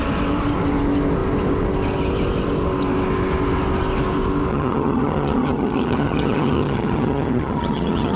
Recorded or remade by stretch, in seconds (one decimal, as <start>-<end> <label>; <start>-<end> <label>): 0.0-4.5 recorded; 4.5-8.2 remade